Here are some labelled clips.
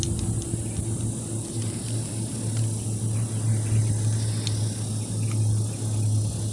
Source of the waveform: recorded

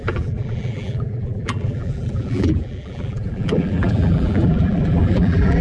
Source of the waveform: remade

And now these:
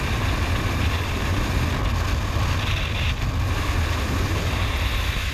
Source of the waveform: recorded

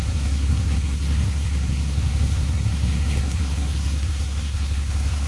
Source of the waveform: remade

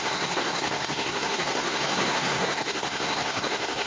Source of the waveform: remade